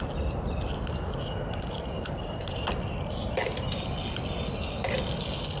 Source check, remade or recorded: recorded